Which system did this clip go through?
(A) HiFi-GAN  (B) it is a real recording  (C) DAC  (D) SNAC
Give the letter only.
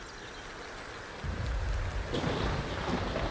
B